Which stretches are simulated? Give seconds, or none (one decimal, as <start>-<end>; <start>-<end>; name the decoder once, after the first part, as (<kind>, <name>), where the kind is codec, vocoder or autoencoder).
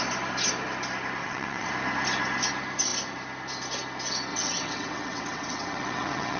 1.2-1.7 (vocoder, WaveNeXt); 4.3-6.4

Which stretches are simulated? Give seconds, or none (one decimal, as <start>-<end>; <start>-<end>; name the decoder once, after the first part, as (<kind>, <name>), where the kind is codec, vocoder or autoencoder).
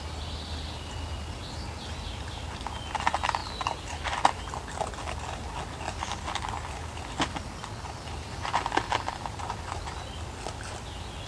none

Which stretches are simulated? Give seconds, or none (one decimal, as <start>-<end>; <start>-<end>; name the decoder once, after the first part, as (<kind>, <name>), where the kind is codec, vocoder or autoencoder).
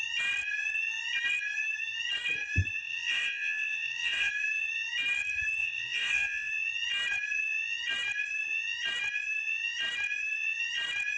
2.8-4.3 (vocoder, WaveNeXt); 5.6-6.5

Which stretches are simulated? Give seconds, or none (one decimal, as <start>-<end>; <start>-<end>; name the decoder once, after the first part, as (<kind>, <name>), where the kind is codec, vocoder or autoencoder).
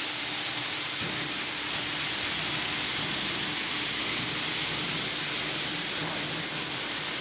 none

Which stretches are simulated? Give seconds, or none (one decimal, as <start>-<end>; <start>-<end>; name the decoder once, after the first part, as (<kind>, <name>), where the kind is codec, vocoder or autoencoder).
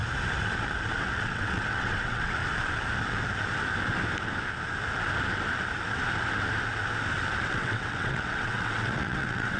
1.0-2.4 (vocoder, WaveNeXt); 7.5-9.6